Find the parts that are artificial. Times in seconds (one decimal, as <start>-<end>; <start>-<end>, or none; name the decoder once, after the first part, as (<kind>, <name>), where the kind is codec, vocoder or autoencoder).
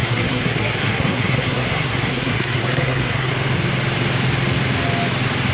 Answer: 0.0-3.3 (codec, SNAC)